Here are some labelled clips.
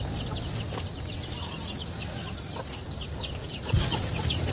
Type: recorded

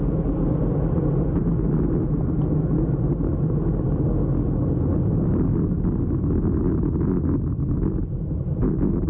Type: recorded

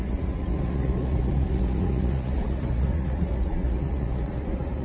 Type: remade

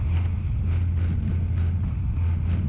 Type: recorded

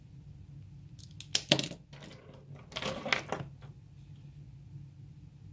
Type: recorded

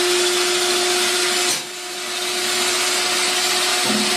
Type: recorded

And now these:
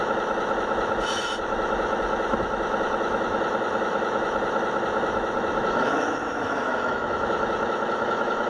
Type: remade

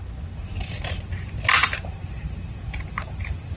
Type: recorded